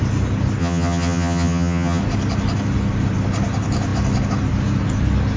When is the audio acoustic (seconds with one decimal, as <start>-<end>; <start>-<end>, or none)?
0.0-0.6; 2.0-5.4